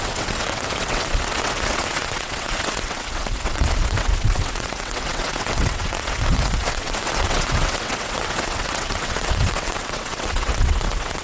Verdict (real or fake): fake